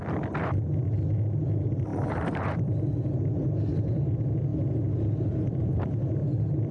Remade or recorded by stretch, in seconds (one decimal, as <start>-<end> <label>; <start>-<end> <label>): 0.0-1.9 recorded; 1.9-2.9 remade; 2.9-6.2 recorded; 6.2-6.7 remade

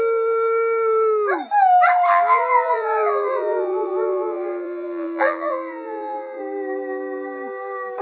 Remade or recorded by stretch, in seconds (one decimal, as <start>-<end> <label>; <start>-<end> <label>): 0.0-2.1 recorded; 2.1-6.4 remade; 6.4-8.0 recorded